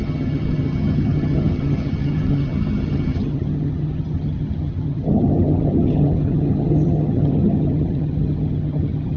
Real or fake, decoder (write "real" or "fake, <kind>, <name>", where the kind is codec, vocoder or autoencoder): fake, vocoder, HiFi-GAN